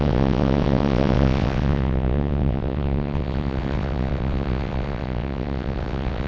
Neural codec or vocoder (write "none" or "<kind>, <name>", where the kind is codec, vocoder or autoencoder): vocoder, WaveNeXt